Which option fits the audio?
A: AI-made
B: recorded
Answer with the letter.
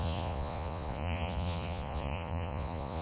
A